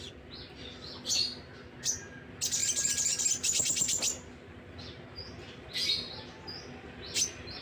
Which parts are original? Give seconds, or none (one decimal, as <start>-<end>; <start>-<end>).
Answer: 0.0-7.6